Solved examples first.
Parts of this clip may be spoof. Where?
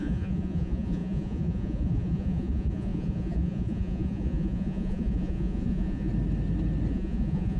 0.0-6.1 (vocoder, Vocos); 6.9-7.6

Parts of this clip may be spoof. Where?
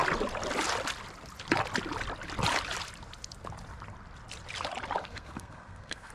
5.0-6.1 (codec, SNAC)